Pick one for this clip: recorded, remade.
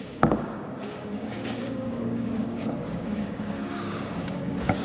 remade